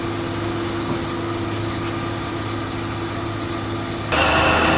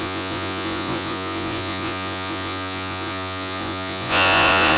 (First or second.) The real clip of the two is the first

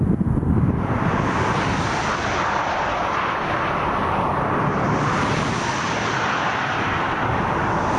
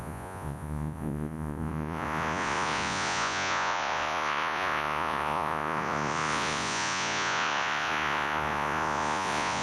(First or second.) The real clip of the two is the first